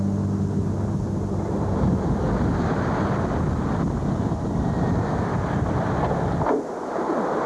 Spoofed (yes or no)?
no